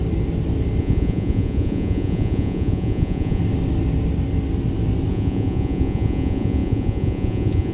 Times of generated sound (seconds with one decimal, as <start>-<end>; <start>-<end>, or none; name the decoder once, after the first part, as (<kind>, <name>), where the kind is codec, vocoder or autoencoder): 0.8-3.4 (vocoder, Vocos); 5.1-7.7